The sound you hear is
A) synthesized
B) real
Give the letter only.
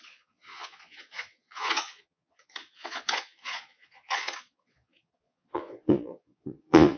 A